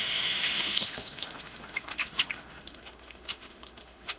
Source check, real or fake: fake